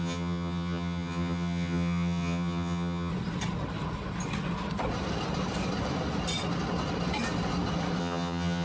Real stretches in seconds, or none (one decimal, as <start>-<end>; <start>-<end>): 3.1-8.0